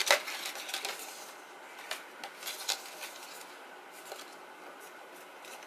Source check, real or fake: real